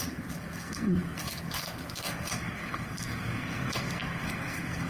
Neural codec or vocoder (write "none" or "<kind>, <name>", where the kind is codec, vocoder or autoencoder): codec, SNAC